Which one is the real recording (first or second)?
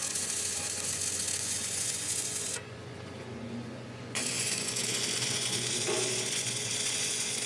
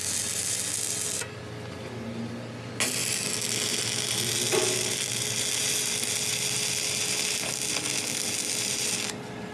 second